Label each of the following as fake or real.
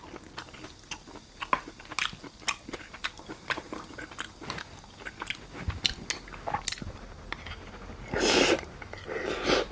real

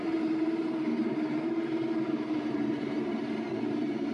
fake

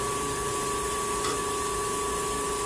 real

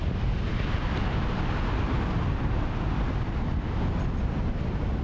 real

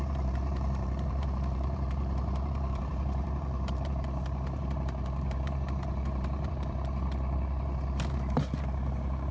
fake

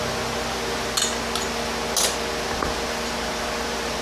real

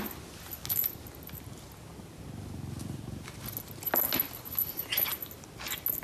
real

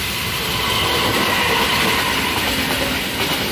fake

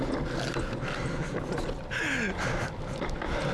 real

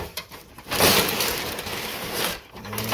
fake